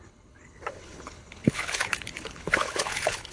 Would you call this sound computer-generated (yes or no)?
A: yes